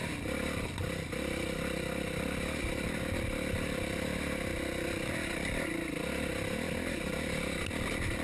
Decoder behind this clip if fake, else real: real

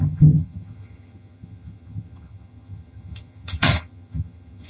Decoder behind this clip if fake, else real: fake, vocoder, HiFi-GAN